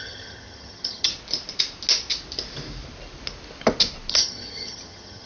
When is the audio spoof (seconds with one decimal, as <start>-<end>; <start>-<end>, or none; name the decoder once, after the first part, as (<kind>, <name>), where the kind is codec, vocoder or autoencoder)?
0.0-1.1 (vocoder, HiFi-GAN); 4.1-5.3